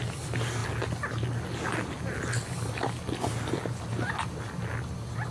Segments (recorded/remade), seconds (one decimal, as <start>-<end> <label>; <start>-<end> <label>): 0.0-5.3 recorded